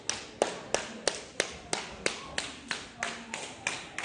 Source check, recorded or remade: recorded